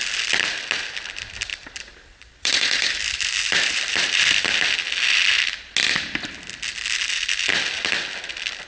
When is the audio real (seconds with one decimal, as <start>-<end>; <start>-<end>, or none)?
0.0-1.5; 4.5-8.7